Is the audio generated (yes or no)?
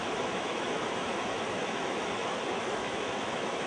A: yes